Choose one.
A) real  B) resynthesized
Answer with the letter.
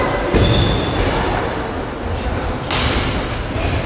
A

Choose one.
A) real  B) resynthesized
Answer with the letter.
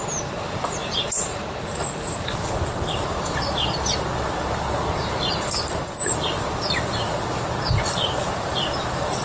A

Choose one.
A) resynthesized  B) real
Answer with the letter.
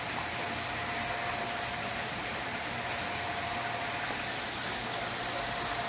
B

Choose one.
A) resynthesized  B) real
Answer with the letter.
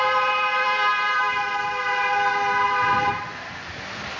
B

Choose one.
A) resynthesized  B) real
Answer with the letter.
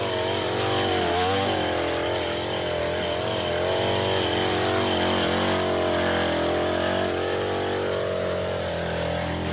B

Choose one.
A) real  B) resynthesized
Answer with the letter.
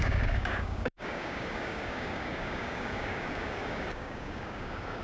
B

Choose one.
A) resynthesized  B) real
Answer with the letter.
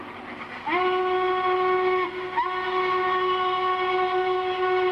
B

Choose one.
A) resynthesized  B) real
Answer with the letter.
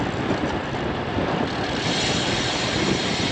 A